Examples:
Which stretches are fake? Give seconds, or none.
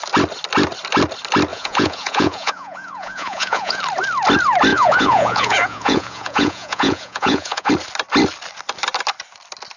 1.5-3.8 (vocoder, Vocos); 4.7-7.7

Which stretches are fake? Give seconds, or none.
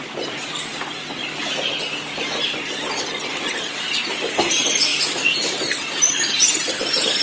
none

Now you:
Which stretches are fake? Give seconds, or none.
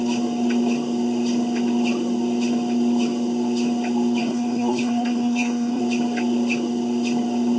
4.2-5.8 (codec, SNAC)